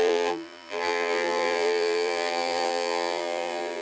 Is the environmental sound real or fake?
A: fake